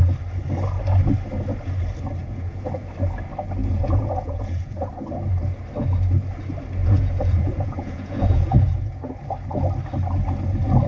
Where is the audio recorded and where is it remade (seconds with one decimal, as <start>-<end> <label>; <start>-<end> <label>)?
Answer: 0.0-2.2 recorded; 2.2-2.7 remade; 2.7-3.6 recorded; 3.6-4.9 remade; 4.9-6.8 recorded; 6.8-9.1 remade; 9.1-10.9 recorded